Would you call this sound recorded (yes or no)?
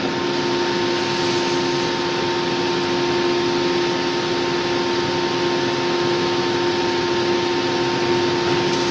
yes